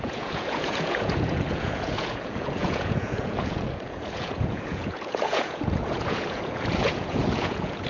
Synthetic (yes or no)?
yes